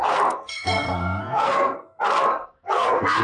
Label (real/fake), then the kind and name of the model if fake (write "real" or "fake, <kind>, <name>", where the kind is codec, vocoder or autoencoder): fake, codec, SNAC